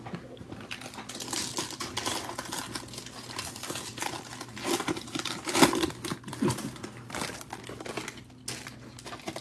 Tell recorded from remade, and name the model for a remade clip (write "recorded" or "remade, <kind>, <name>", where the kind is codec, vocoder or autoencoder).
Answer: recorded